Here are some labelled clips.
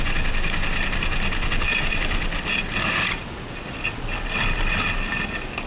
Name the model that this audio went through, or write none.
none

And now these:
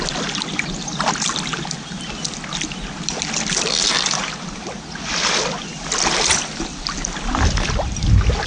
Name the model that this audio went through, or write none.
none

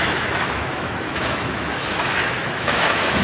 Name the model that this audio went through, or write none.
autoencoder, DAC-VAE